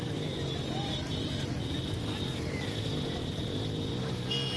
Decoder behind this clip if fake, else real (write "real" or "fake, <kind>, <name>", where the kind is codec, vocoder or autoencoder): real